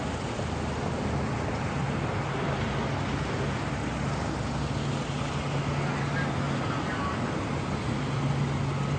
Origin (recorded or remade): recorded